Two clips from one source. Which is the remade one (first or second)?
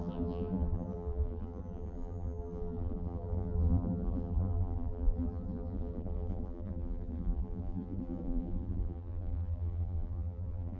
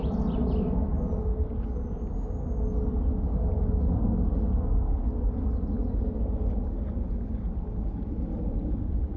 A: first